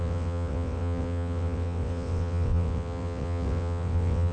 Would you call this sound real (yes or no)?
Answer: no